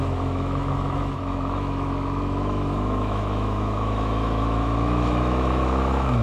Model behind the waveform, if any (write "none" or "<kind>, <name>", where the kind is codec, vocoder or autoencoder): autoencoder, DAC-VAE